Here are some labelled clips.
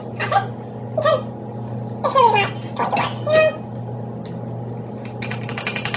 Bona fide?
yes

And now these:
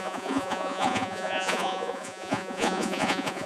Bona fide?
no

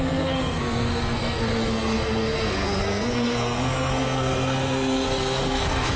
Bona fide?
no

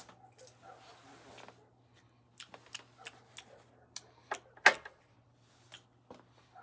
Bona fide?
yes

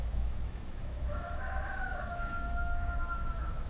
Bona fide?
no